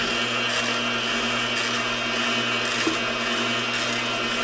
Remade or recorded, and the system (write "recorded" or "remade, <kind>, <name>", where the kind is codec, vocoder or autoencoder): recorded